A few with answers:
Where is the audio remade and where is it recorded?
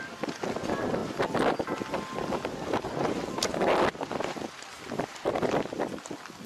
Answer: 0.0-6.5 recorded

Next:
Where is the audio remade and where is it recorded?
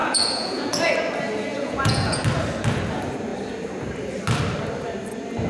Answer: 0.0-0.9 remade; 0.9-1.5 recorded; 1.5-2.2 remade; 2.2-5.5 recorded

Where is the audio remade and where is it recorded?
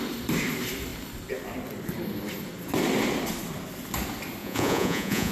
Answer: 0.0-4.4 recorded; 4.4-5.3 remade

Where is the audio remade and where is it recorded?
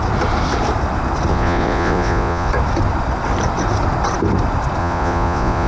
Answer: 0.0-1.3 recorded; 1.3-2.5 remade; 2.5-4.8 recorded; 4.8-5.7 remade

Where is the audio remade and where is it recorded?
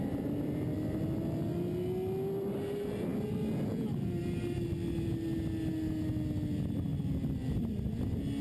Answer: 0.0-8.4 recorded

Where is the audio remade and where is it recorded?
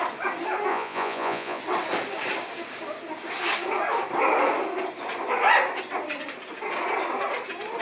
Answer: 0.0-0.7 recorded; 0.7-1.6 remade; 1.6-7.8 recorded